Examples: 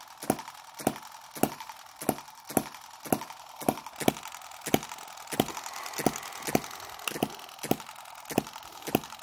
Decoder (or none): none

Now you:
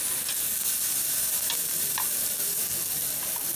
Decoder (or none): none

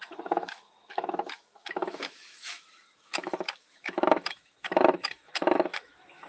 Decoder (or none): autoencoder, DAC-VAE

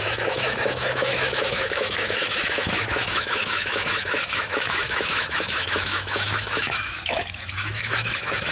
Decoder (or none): autoencoder, DAC-VAE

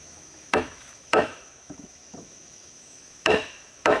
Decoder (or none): autoencoder, DAC-VAE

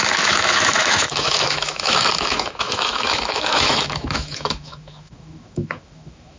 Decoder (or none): autoencoder, DAC-VAE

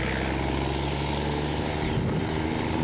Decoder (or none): none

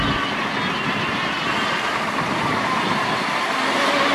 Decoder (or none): none